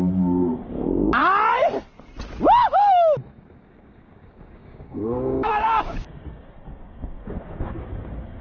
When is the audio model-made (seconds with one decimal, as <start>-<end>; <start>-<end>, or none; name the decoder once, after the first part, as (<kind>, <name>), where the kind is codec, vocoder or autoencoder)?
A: 0.0-1.2 (codec, DAC); 3.7-8.4